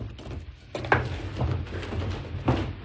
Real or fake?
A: real